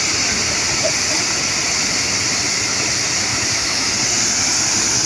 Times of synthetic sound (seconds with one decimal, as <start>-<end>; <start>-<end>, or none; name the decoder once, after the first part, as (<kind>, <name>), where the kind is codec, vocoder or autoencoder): 3.3-3.9 (autoencoder, DAC-VAE)